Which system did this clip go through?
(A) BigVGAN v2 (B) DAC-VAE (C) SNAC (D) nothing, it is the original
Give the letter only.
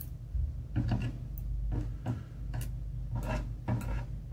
D